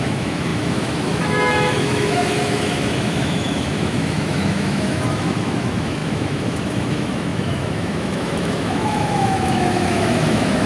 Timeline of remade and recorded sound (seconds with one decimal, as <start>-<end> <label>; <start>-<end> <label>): 0.0-10.7 remade